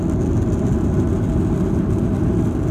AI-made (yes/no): no